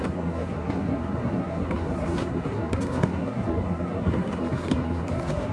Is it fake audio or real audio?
fake